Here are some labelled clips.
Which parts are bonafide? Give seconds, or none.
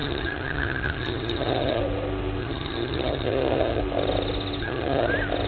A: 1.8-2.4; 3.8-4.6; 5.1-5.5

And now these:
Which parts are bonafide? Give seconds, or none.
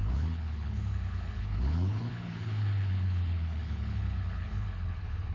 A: none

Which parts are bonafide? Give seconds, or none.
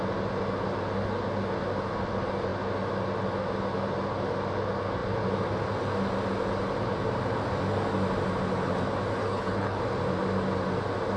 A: 0.0-9.2; 9.8-11.2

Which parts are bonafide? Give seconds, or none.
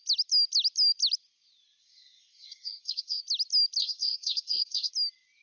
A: 0.0-1.8; 3.2-3.8; 4.9-5.4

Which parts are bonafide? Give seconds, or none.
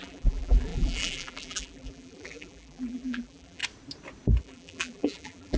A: 3.6-4.4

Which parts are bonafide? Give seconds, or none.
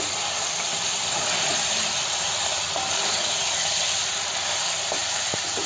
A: 1.5-3.4; 5.0-5.7